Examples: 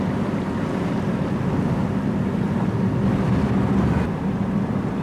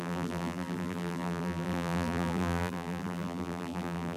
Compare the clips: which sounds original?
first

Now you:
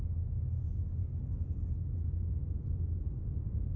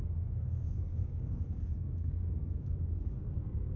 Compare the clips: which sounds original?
first